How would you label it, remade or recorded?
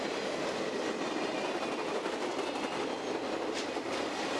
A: recorded